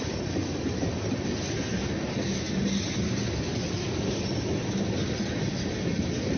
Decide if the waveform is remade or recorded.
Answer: recorded